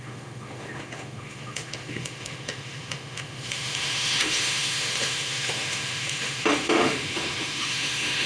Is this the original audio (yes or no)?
no